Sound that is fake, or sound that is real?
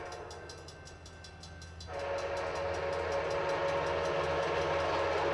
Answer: real